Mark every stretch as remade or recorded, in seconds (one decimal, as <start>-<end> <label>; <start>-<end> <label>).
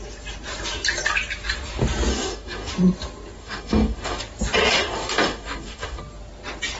0.0-2.1 recorded; 2.1-2.7 remade; 2.7-3.4 recorded; 3.4-4.2 remade; 4.2-4.8 recorded; 4.8-6.0 remade; 6.0-6.8 recorded